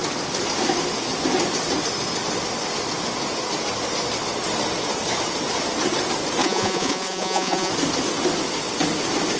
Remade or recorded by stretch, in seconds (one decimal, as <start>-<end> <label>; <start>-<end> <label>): 0.0-6.4 recorded; 6.4-7.7 remade; 7.7-9.4 recorded